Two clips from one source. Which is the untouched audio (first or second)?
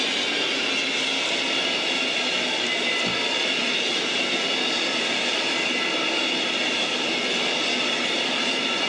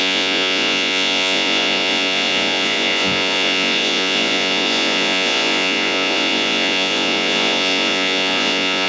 first